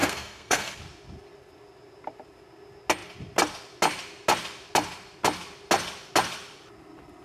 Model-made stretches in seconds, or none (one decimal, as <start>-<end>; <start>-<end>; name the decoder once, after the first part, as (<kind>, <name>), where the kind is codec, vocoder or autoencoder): 0.0-0.8 (codec, SNAC)